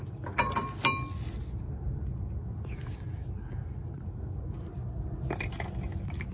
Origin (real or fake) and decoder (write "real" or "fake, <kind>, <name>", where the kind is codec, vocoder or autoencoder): real